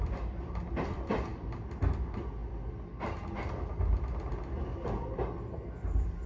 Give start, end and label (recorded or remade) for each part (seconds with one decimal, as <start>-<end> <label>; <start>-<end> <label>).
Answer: 0.0-6.3 recorded